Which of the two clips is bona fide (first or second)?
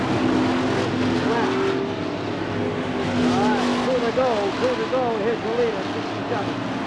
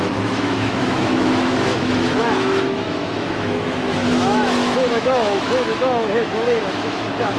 first